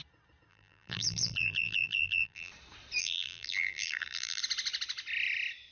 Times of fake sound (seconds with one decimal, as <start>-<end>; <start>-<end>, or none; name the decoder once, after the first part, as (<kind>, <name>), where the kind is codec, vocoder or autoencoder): 0.5-2.5 (vocoder, BigVGAN v2); 3.0-4.4